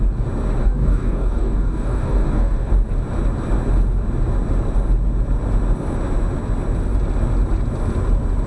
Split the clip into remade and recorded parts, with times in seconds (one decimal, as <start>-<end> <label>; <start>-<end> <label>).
0.0-0.6 recorded; 0.6-2.7 remade; 2.7-8.5 recorded